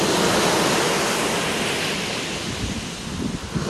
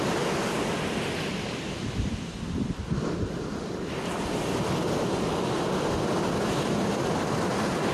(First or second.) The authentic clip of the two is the first